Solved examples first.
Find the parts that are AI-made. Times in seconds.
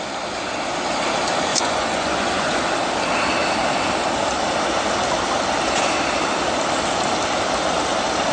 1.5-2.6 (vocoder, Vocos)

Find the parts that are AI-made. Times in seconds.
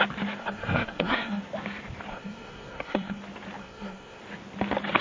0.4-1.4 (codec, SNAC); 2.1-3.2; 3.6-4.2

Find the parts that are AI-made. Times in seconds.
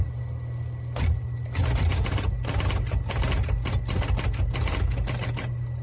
none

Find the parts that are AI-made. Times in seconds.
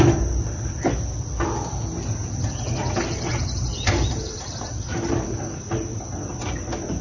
2.8-4.7 (vocoder, BigVGAN v2)